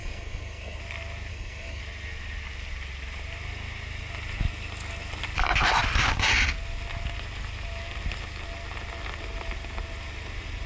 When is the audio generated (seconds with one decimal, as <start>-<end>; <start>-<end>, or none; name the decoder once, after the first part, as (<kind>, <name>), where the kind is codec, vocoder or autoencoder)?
0.0-0.8 (codec, SNAC); 1.3-1.8